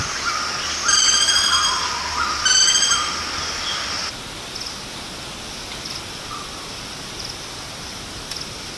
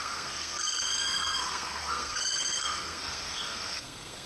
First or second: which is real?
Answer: first